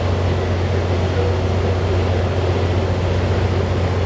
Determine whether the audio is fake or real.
real